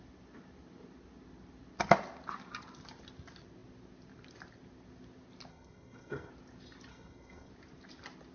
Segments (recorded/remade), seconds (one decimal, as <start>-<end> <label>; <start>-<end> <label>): 0.0-5.5 recorded; 5.5-6.3 remade; 6.3-6.9 recorded; 6.9-7.5 remade; 7.5-8.3 recorded